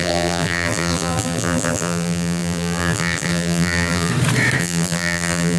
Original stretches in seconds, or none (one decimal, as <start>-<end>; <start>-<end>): 4.1-4.6